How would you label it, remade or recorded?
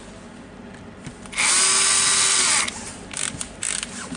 recorded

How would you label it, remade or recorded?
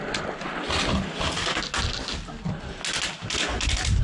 recorded